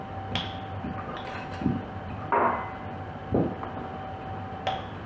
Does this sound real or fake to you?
real